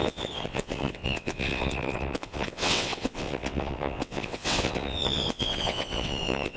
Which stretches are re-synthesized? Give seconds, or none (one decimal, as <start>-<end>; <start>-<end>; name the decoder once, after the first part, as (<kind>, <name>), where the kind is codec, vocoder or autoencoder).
0.0-6.6 (vocoder, WaveNeXt)